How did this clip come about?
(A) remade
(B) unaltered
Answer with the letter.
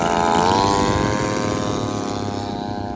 B